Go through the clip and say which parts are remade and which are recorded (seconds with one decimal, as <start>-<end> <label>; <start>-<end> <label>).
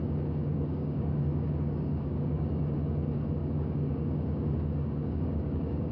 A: 0.0-0.5 recorded; 0.5-2.6 remade; 2.6-3.4 recorded; 3.4-5.9 remade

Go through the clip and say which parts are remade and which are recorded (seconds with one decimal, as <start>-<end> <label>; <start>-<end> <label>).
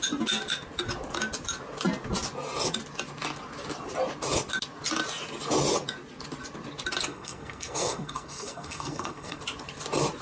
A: 0.0-7.1 recorded; 7.1-9.4 remade; 9.4-10.2 recorded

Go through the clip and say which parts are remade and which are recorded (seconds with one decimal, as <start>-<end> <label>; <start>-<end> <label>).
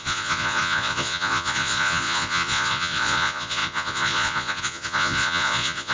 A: 0.0-5.9 remade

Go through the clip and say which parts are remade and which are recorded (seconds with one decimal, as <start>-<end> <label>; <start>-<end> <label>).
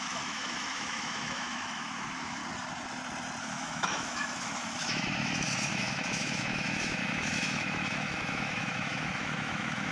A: 0.0-2.4 remade; 2.4-3.4 recorded; 3.4-9.9 remade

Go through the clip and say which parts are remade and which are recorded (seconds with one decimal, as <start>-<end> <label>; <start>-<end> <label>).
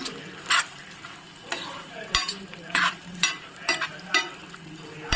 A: 0.0-1.6 recorded; 1.6-4.1 remade; 4.1-5.2 recorded